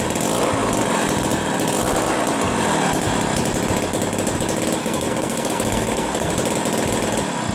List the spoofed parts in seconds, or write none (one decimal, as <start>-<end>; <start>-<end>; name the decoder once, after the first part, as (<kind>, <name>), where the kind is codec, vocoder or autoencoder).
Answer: 4.8-6.3 (codec, SNAC)